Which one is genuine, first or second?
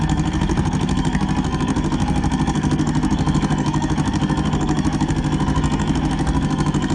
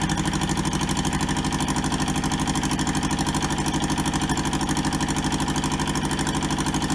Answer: second